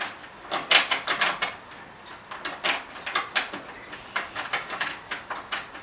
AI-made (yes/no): no